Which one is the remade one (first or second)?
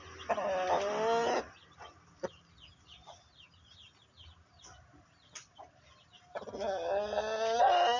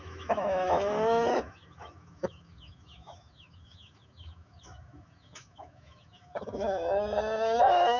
second